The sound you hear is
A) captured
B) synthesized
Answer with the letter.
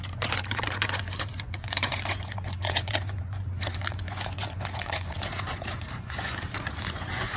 B